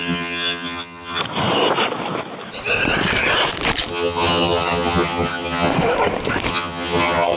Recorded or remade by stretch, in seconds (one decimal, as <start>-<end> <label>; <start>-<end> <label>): 0.0-1.2 remade; 1.2-3.9 recorded; 3.9-5.7 remade; 5.7-6.5 recorded; 6.5-7.4 remade